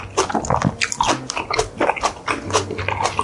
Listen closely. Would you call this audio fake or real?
real